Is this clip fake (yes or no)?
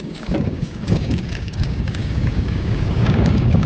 yes